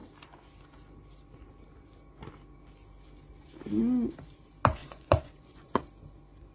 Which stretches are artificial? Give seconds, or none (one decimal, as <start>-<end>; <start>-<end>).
4.8-5.8